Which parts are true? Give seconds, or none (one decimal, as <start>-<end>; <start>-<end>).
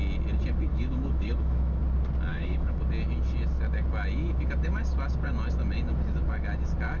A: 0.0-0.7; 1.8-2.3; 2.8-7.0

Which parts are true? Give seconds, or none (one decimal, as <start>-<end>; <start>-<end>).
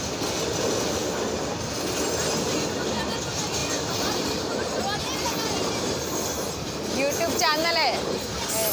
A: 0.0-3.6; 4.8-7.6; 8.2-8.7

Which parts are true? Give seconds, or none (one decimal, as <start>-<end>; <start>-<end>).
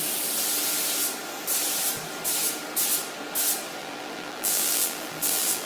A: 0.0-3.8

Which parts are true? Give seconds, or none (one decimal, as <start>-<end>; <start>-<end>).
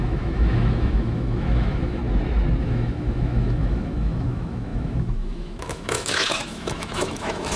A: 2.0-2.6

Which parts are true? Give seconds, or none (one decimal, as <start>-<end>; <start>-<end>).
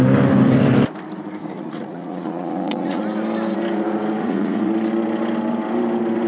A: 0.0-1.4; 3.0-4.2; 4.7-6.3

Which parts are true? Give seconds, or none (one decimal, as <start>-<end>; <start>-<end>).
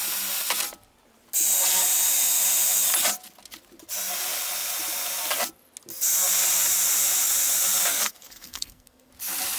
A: 0.0-7.9; 9.1-9.6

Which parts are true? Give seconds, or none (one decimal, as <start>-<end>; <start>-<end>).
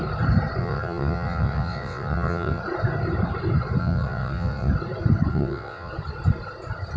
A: 0.0-0.6; 2.6-3.8; 4.7-5.3; 5.9-7.0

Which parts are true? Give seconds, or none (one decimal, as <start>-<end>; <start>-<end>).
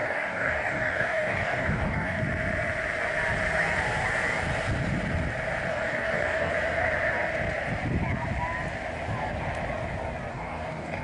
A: 2.2-5.7; 6.5-10.3